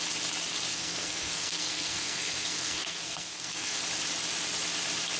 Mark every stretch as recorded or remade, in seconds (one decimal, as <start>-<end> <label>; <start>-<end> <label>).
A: 0.0-0.7 recorded; 0.7-3.8 remade; 3.8-5.2 recorded